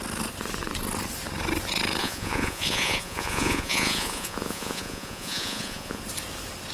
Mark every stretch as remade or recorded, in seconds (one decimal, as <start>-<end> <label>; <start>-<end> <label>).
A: 0.0-2.0 recorded; 2.0-6.0 remade; 6.0-6.7 recorded